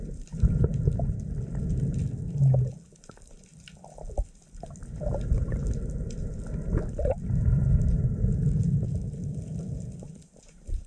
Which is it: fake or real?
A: real